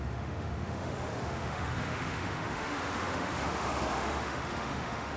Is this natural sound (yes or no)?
no